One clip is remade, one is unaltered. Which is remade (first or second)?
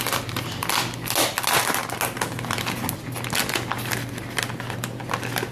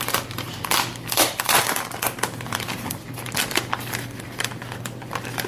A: second